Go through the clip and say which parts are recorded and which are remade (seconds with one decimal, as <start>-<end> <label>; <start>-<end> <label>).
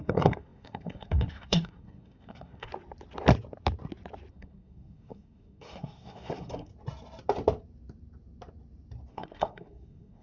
0.0-2.7 remade; 2.7-4.3 recorded; 4.3-6.7 remade; 6.7-9.1 recorded; 9.1-10.2 remade